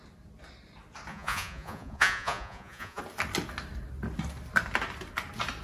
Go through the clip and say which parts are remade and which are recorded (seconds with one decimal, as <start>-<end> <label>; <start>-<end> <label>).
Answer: 0.0-1.1 recorded; 1.1-3.0 remade; 3.0-5.6 recorded

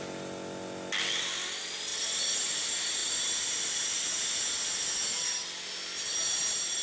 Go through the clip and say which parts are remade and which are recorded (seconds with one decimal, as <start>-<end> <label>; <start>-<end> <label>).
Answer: 0.0-6.8 recorded

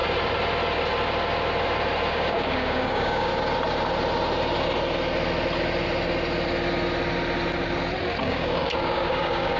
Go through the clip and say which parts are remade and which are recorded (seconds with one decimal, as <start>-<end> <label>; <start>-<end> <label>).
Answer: 0.0-2.1 recorded; 2.1-3.3 remade; 3.3-8.2 recorded; 8.2-9.6 remade

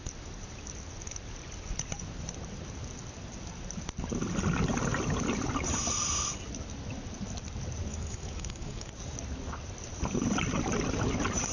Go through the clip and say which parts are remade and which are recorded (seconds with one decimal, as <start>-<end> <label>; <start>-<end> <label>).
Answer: 0.0-7.9 recorded; 7.9-8.9 remade; 8.9-11.5 recorded

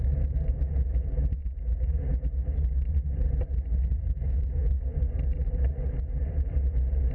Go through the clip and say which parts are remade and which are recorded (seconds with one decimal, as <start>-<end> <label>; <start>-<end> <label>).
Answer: 0.0-1.4 remade; 1.4-3.4 recorded; 3.4-7.1 remade

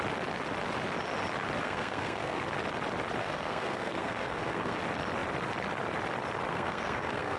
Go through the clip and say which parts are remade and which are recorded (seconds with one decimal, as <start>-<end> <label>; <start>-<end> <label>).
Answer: 0.0-1.6 recorded; 1.6-2.4 remade; 2.4-3.2 recorded; 3.2-4.8 remade; 4.8-6.5 recorded; 6.5-7.4 remade

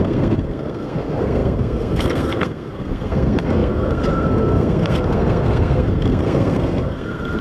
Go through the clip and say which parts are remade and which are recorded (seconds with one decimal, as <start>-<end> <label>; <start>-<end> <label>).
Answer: 0.0-7.4 remade